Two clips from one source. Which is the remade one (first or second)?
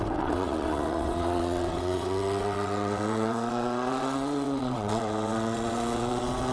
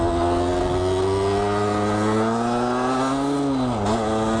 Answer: first